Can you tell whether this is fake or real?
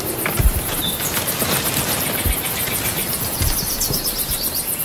real